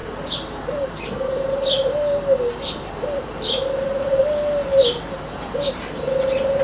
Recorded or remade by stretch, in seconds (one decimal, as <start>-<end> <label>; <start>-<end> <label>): 0.0-6.6 remade